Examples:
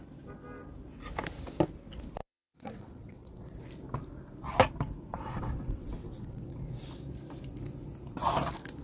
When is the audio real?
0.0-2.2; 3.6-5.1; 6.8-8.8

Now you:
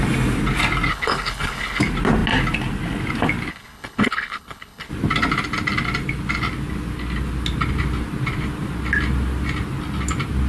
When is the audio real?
0.0-0.9; 1.8-3.5; 4.9-10.5

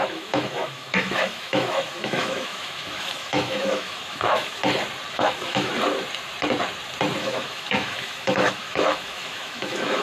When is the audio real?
4.6-5.1; 5.7-7.2